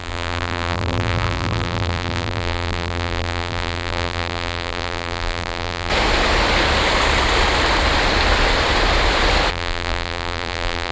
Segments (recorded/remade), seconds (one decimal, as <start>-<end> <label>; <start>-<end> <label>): 0.0-5.9 remade; 5.9-9.5 recorded; 9.5-10.9 remade